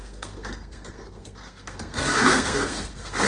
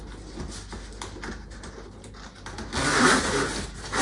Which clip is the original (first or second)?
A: second